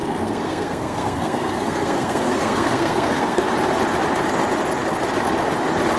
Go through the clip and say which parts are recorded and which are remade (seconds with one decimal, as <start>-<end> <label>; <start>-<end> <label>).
0.0-3.4 remade; 3.4-6.0 recorded